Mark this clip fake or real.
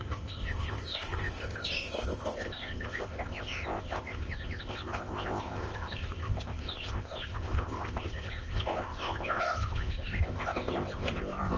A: fake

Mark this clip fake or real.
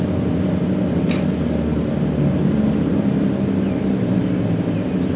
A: real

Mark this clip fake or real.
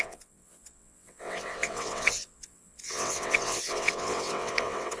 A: fake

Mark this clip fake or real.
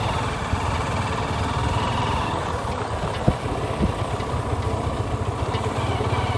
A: real